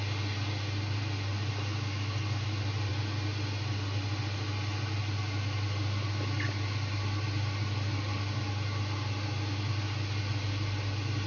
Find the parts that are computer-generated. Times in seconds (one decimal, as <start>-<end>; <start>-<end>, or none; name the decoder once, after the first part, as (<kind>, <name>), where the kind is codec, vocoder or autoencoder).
none